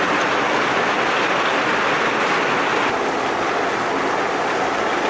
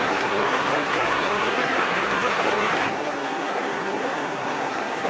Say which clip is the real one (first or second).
first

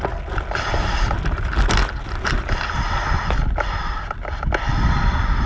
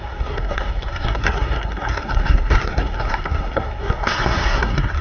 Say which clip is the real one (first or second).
first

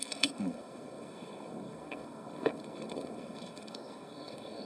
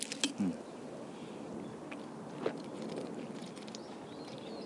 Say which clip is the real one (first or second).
second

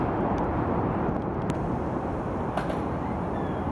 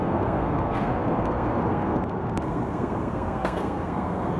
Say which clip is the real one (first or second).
first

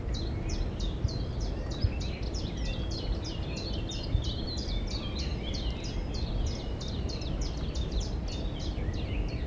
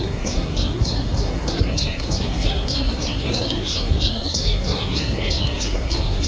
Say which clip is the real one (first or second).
first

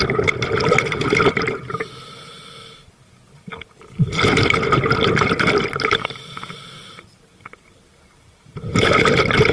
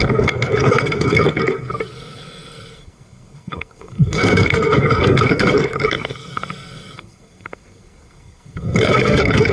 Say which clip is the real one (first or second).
first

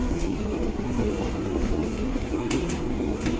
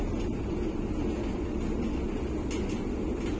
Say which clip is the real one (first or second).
second